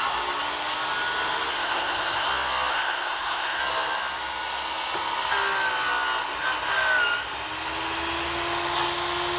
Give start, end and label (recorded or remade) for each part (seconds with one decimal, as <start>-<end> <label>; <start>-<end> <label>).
0.0-1.5 recorded; 1.5-2.3 remade; 2.3-2.7 recorded; 2.7-3.6 remade; 3.6-9.4 recorded